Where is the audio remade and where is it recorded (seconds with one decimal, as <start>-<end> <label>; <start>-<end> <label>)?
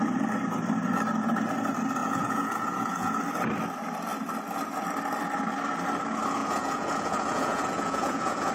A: 0.0-2.0 recorded; 2.0-3.2 remade; 3.2-6.4 recorded; 6.4-8.5 remade